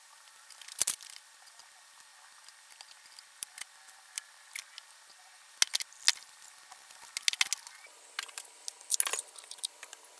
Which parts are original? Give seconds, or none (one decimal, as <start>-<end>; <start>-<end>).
1.6-2.7; 5.1-9.4